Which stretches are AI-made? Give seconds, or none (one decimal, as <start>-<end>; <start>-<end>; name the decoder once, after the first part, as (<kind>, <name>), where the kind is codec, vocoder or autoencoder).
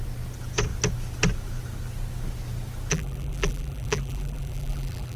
2.9-5.2 (vocoder, BigVGAN v2)